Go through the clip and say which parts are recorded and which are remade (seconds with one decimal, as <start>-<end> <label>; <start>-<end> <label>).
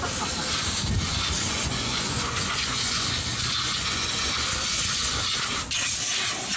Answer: 0.0-1.1 recorded; 1.1-5.1 remade; 5.1-6.6 recorded